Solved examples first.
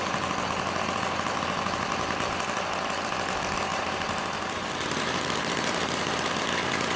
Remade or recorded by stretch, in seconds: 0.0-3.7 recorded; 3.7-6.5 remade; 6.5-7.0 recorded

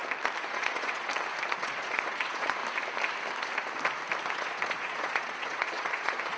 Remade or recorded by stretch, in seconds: 0.0-0.5 recorded; 0.5-1.1 remade; 1.1-1.6 recorded; 1.6-2.6 remade; 2.6-4.3 recorded; 4.3-6.4 remade

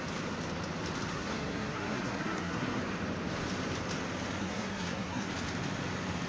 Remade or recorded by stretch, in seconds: 0.0-1.1 recorded; 1.1-2.8 remade; 2.8-4.4 recorded; 4.4-5.3 remade; 5.3-6.3 recorded

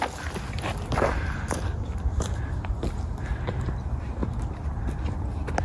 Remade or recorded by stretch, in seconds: 0.0-5.6 recorded

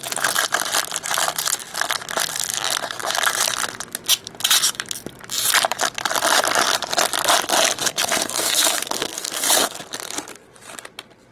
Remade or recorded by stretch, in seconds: 0.0-7.8 recorded; 7.8-9.8 remade; 9.8-11.3 recorded

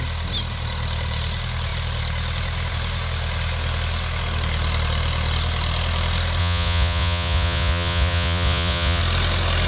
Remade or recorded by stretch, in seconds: 0.0-6.4 recorded; 6.4-9.0 remade; 9.0-9.7 recorded

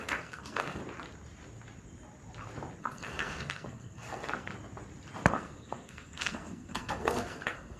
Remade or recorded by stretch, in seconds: 0.0-0.8 remade; 0.8-2.8 recorded; 2.8-4.5 remade; 4.5-5.3 recorded; 5.3-7.8 remade

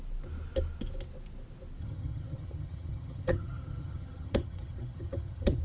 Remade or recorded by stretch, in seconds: 0.0-1.8 recorded; 1.8-5.6 remade